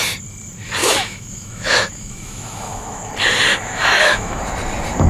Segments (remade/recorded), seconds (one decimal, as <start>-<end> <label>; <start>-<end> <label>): 0.0-0.8 recorded; 0.8-3.1 remade; 3.1-3.5 recorded; 3.5-4.4 remade; 4.4-5.1 recorded